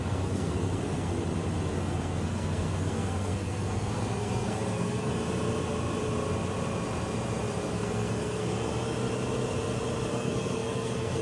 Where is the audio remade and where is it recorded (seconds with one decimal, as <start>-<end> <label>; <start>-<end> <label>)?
0.0-1.1 remade; 1.1-1.8 recorded; 1.8-5.1 remade; 5.1-7.7 recorded; 7.7-8.7 remade; 8.7-10.1 recorded; 10.1-11.2 remade